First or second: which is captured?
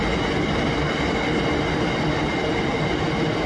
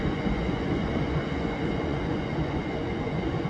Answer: first